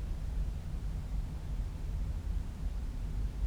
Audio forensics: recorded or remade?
remade